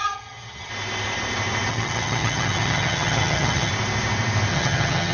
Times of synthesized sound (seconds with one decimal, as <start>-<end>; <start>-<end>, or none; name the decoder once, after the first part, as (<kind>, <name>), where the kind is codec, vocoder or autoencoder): 0.0-0.7 (vocoder, HiFi-GAN); 1.7-3.7; 4.5-5.1